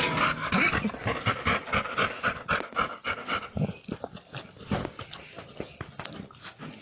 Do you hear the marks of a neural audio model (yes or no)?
no